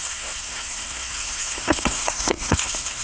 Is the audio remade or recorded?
remade